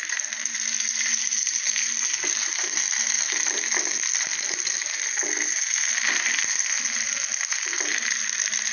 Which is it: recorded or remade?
recorded